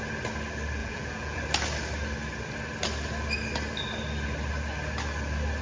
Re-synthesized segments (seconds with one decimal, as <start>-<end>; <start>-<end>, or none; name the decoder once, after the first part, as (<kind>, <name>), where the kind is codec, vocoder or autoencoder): 0.8-1.4 (vocoder, Vocos)